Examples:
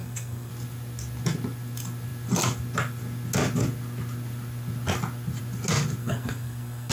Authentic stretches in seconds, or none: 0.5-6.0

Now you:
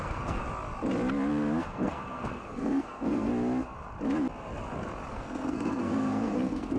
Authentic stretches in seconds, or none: 0.4-1.6; 3.3-5.1

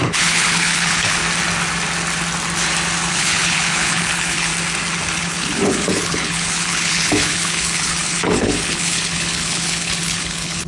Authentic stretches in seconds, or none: 1.2-3.1; 4.5-5.2